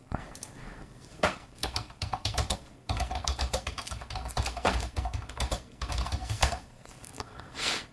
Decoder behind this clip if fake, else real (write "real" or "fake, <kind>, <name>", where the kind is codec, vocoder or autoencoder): fake, codec, SNAC